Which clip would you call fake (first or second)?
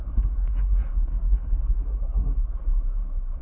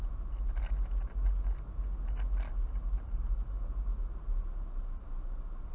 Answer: first